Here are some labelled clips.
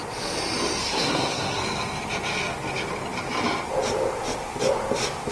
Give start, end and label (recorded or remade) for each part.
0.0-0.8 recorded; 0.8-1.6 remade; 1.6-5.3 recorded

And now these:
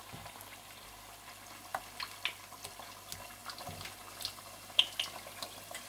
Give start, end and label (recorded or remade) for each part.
0.0-5.9 recorded

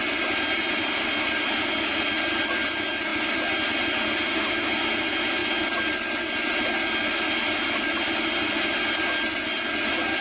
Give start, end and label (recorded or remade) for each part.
0.0-10.2 recorded

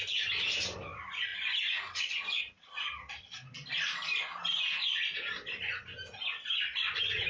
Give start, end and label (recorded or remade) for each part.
0.0-7.3 recorded